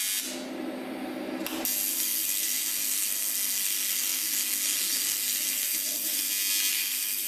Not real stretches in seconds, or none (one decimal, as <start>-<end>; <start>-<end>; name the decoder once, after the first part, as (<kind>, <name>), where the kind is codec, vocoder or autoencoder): 1.9-6.3 (codec, SNAC); 6.7-7.3